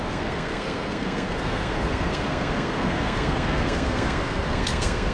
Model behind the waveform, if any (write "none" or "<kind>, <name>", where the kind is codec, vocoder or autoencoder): codec, SNAC